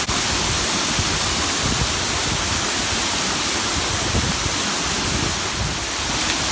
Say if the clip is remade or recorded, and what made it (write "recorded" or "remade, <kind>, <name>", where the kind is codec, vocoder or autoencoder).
recorded